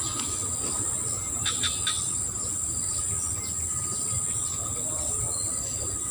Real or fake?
real